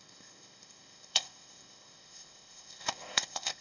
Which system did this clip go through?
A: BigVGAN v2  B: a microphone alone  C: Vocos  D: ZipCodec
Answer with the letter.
D